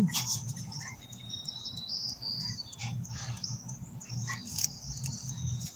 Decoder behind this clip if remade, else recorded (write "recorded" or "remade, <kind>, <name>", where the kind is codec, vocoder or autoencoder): remade, codec, DAC